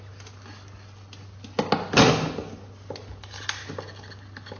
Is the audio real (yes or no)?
yes